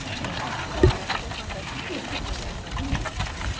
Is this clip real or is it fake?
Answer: real